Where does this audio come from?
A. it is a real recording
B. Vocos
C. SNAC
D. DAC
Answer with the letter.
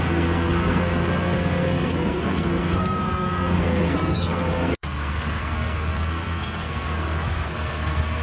C